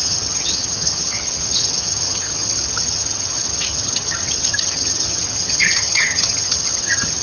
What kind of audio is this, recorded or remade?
remade